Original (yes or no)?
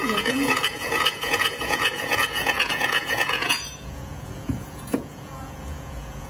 no